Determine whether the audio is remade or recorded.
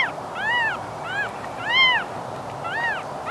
recorded